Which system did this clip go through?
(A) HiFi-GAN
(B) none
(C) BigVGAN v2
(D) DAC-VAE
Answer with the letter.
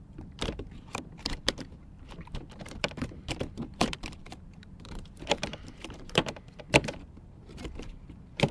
C